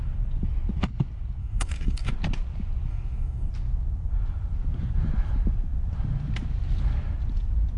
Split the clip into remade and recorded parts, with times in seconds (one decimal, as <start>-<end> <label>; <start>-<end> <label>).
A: 0.0-1.4 recorded; 1.4-2.1 remade; 2.1-2.9 recorded; 2.9-3.5 remade; 3.5-7.8 recorded